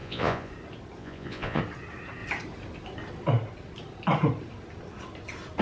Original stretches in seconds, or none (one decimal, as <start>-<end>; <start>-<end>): 0.5-1.0; 1.6-5.6